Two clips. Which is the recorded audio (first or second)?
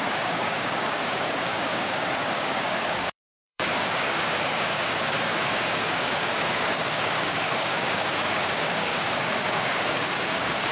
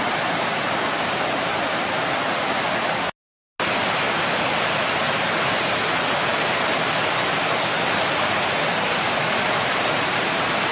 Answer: second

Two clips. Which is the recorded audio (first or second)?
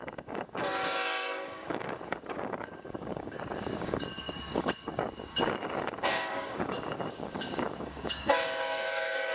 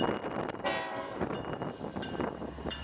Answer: second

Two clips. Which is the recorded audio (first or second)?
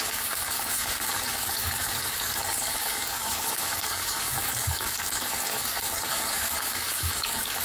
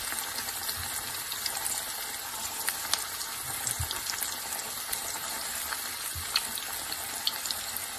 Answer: second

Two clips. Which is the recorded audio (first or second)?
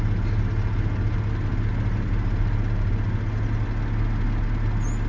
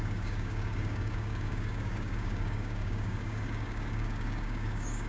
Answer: first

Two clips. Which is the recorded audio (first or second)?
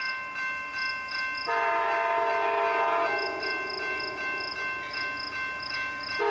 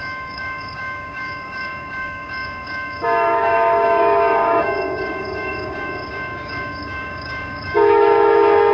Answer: first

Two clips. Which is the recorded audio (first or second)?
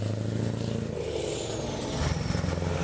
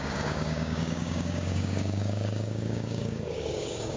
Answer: first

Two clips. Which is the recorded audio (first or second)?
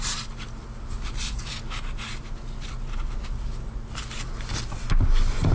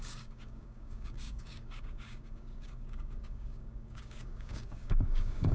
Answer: first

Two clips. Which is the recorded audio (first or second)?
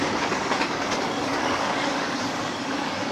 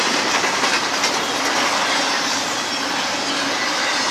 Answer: second